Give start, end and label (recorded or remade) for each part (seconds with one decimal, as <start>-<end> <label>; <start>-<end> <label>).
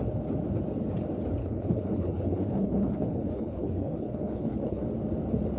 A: 0.0-1.4 recorded; 1.4-4.8 remade; 4.8-5.6 recorded